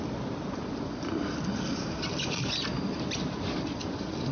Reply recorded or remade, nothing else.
recorded